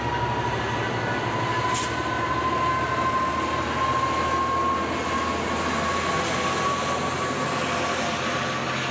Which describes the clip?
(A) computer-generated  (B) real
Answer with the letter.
B